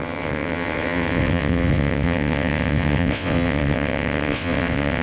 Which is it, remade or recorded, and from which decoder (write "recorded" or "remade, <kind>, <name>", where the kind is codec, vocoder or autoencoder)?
remade, vocoder, WaveNeXt